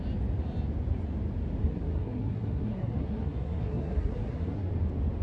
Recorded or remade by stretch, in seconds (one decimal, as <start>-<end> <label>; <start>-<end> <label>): 0.0-1.6 recorded; 1.6-4.7 remade; 4.7-5.2 recorded